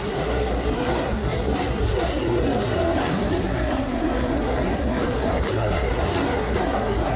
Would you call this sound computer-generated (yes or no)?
yes